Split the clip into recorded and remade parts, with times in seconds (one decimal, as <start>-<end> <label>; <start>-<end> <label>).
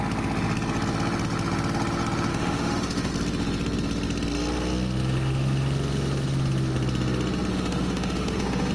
0.0-2.3 recorded; 2.3-3.1 remade; 3.1-7.5 recorded; 7.5-8.7 remade